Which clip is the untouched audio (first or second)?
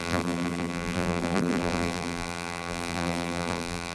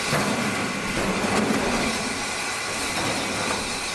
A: second